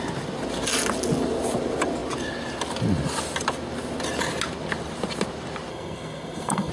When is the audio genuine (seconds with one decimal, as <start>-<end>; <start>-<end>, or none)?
0.0-5.7